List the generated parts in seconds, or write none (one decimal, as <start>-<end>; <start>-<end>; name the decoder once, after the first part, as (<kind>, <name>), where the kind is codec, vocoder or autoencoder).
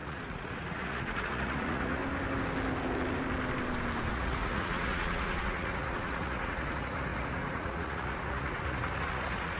0.0-2.0 (vocoder, Vocos); 4.1-9.6